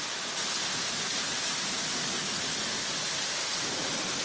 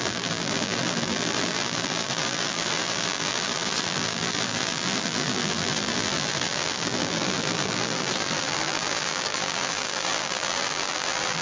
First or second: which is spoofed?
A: second